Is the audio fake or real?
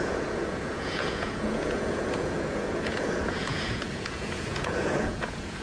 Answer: fake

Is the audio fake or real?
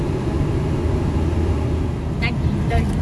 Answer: real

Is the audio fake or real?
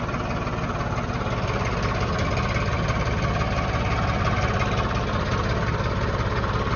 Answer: real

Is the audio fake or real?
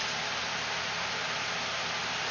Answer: real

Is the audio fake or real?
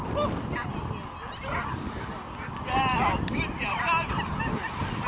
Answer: real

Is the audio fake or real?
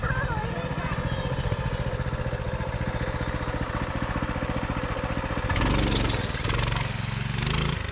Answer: real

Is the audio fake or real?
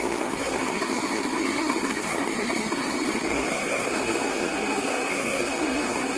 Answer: fake